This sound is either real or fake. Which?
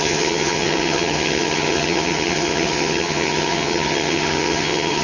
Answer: fake